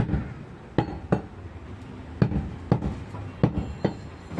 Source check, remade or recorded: recorded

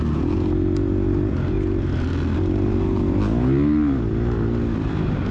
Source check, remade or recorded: recorded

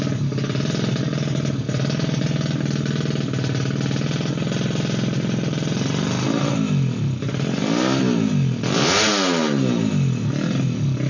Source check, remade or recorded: recorded